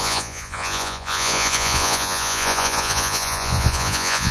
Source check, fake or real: fake